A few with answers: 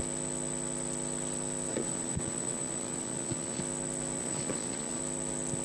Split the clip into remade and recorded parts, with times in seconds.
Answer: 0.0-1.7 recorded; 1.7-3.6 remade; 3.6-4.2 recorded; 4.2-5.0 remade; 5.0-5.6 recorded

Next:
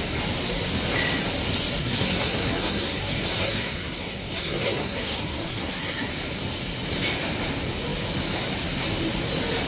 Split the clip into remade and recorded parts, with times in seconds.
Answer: 0.0-1.8 recorded; 1.8-6.1 remade; 6.1-9.7 recorded

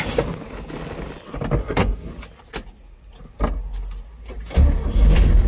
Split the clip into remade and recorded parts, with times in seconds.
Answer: 0.0-1.6 recorded; 1.6-2.1 remade; 2.1-5.5 recorded

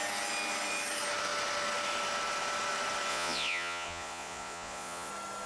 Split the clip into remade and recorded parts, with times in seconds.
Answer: 0.0-3.1 recorded; 3.1-5.1 remade; 5.1-5.5 recorded